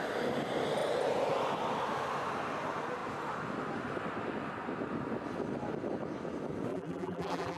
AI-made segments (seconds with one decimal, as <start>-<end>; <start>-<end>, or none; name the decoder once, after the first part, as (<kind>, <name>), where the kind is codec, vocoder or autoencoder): 6.7-7.6 (vocoder, BigVGAN v2)